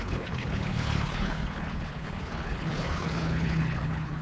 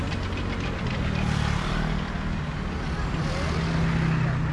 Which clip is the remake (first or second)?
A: first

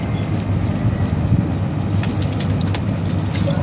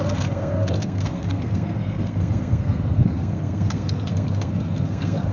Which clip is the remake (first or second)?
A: second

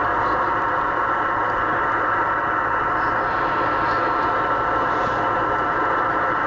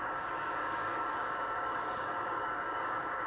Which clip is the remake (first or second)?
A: second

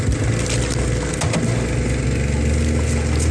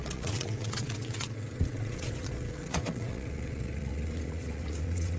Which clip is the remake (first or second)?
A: second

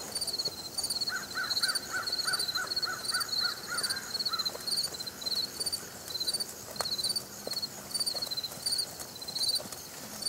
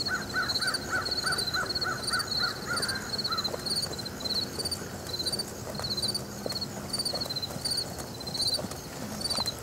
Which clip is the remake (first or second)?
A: first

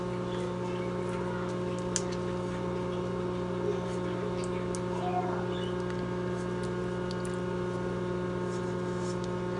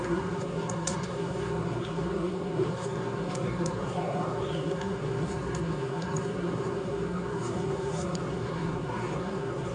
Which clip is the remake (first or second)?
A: second